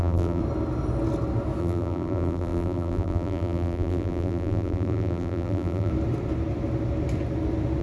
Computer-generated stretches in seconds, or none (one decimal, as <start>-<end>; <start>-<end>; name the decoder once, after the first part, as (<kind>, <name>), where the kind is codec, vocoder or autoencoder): 0.0-0.4 (vocoder, BigVGAN v2); 1.6-5.9